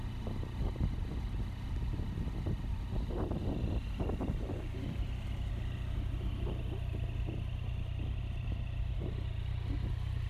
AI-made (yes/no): no